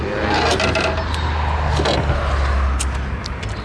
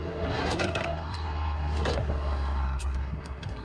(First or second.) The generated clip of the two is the second